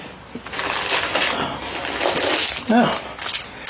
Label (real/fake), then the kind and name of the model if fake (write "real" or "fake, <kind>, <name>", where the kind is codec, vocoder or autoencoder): real